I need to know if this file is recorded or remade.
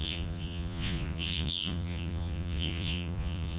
remade